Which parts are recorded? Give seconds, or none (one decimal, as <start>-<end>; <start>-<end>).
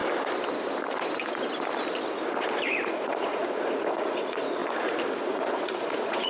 0.0-2.9; 4.6-5.2